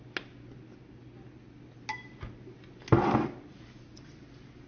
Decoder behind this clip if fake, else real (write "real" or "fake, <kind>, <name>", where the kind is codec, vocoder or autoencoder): real